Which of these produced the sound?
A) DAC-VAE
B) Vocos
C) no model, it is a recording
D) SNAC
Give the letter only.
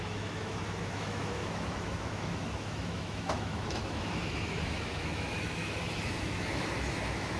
A